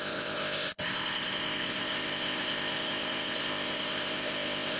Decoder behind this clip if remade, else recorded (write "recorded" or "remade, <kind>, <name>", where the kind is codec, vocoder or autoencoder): remade, codec, ZipCodec